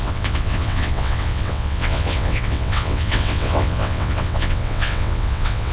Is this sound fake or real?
fake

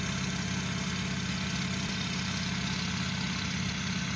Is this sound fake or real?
real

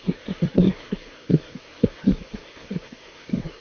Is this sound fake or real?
fake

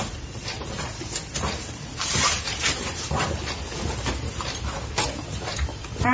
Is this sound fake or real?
real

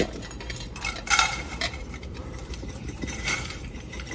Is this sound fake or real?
fake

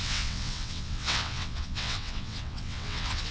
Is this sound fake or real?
fake